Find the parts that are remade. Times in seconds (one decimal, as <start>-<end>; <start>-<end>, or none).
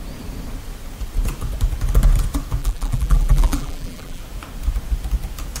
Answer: 2.6-4.2